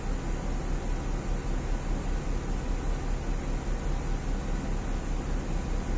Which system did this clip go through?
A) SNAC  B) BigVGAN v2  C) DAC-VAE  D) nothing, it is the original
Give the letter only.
D